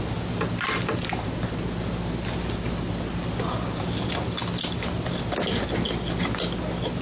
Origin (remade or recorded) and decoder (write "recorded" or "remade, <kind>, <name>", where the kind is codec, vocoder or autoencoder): recorded